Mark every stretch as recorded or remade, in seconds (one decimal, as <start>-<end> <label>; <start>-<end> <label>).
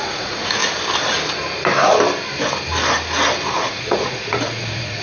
0.0-0.6 remade; 0.6-3.5 recorded; 3.5-5.0 remade